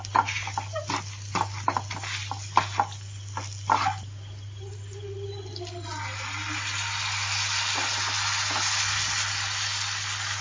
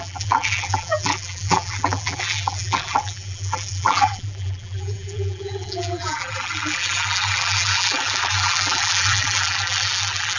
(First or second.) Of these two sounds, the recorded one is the first